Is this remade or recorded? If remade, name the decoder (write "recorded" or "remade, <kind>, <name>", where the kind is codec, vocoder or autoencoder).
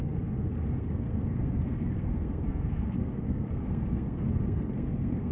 remade, codec, SNAC